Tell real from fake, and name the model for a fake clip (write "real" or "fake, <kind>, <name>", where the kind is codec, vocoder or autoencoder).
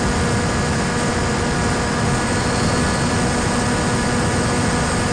real